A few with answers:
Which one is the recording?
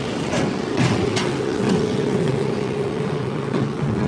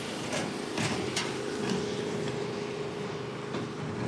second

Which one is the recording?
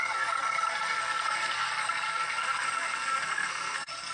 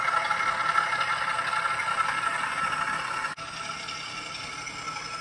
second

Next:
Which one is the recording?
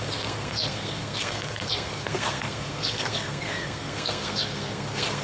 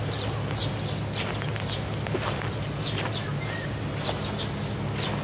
second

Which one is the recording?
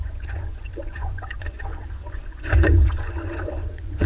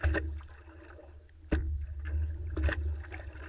second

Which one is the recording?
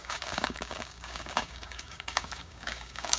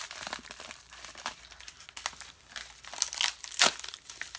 second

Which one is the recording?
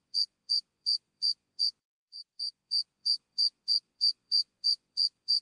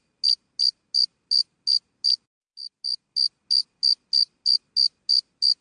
second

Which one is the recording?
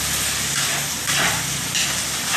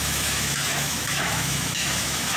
first